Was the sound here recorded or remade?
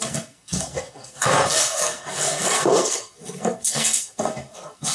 remade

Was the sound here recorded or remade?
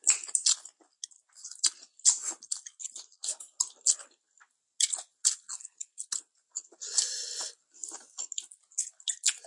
recorded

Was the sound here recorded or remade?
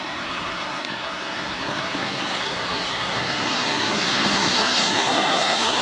remade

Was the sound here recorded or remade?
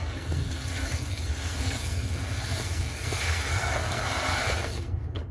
remade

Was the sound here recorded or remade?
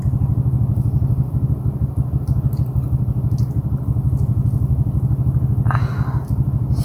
recorded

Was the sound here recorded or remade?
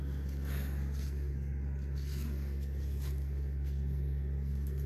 remade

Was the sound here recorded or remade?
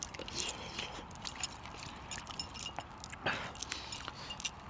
recorded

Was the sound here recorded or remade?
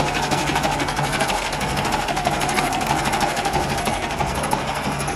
remade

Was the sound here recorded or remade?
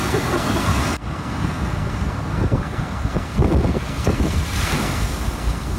remade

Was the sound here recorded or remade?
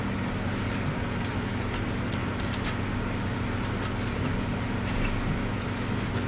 recorded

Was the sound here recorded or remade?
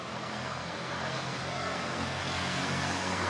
remade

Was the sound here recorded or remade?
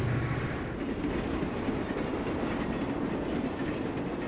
recorded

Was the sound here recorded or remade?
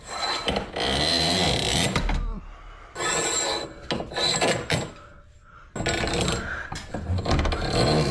recorded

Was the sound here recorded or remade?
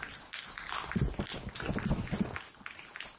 recorded